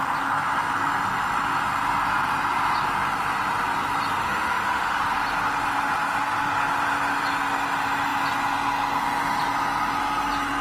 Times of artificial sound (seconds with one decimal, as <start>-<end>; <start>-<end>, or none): 4.2-5.0